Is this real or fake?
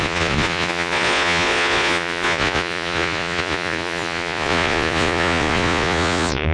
fake